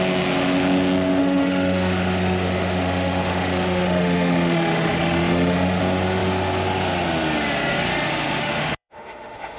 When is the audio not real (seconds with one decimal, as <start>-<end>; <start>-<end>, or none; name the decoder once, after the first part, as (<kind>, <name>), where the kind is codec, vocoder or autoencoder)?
1.2-5.8 (autoencoder, DAC-VAE); 8.4-9.6